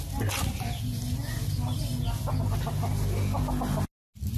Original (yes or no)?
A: yes